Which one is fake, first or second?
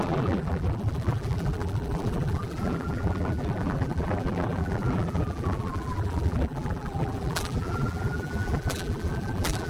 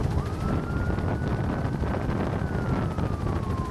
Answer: first